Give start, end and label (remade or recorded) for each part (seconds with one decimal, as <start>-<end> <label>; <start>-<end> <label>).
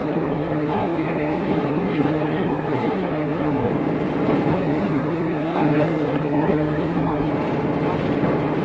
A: 0.0-3.7 remade; 3.7-4.5 recorded; 4.5-7.3 remade; 7.3-8.6 recorded